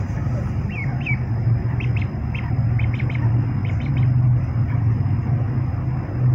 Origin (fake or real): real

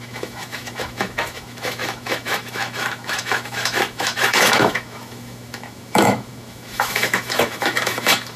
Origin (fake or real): fake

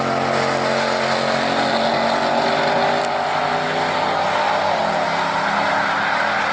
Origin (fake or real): real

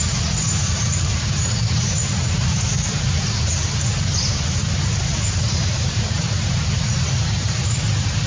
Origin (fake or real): fake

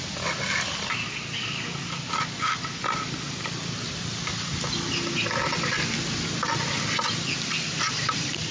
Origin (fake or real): real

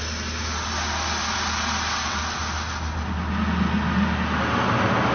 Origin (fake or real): real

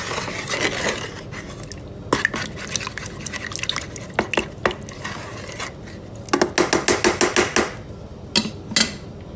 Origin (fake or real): real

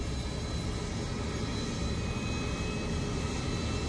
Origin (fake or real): real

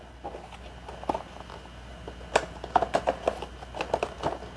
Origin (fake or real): real